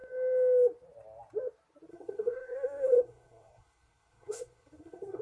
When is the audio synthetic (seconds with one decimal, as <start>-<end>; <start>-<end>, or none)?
1.9-5.2